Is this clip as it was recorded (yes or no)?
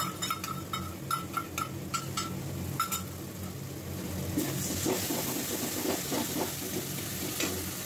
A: yes